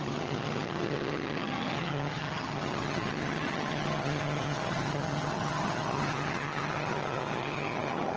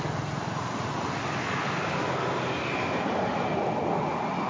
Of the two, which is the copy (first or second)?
first